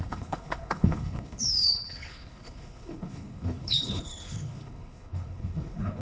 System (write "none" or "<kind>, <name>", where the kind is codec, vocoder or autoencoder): codec, HILCodec